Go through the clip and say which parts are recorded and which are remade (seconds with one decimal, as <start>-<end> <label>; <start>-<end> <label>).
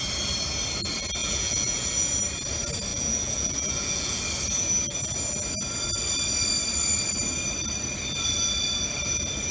0.0-1.2 recorded; 1.2-2.2 remade; 2.2-2.9 recorded; 2.9-4.2 remade; 4.2-9.5 recorded